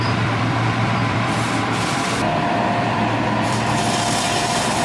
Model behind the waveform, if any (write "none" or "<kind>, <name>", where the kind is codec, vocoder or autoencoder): vocoder, BigVGAN v2